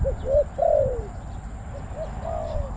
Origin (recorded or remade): recorded